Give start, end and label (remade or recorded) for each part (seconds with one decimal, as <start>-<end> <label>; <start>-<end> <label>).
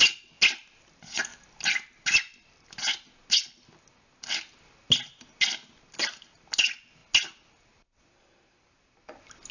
0.0-9.5 recorded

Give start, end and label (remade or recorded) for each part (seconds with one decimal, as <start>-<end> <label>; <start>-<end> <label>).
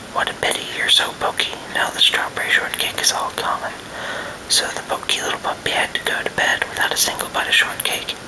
0.0-8.3 recorded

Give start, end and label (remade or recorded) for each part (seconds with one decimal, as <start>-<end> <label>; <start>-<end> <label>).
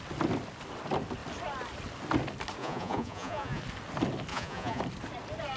0.0-2.6 recorded; 2.6-3.6 remade; 3.6-4.3 recorded; 4.3-4.8 remade; 4.8-5.6 recorded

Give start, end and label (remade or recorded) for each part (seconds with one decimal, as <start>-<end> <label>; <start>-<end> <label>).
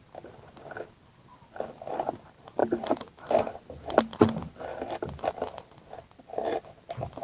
0.0-7.2 recorded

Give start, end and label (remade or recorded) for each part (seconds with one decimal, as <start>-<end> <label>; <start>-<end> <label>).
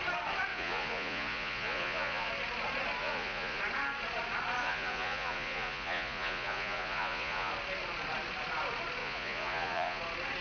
0.0-0.5 recorded; 0.5-2.3 remade; 2.3-3.0 recorded; 3.0-3.6 remade; 3.6-4.6 recorded; 4.6-7.5 remade; 7.5-9.0 recorded; 9.0-10.0 remade; 10.0-10.4 recorded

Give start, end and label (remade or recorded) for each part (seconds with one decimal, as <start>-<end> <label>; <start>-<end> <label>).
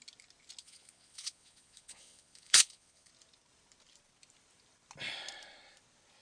0.0-0.6 recorded; 0.6-3.1 remade; 3.1-6.2 recorded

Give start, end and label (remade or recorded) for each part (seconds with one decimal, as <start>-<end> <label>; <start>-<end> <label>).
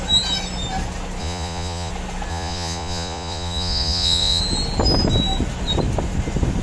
0.0-1.2 recorded; 1.2-1.9 remade; 1.9-2.3 recorded; 2.3-4.4 remade; 4.4-6.6 recorded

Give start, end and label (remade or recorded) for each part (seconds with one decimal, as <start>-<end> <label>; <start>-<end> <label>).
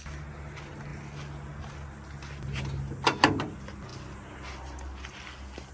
0.0-5.7 recorded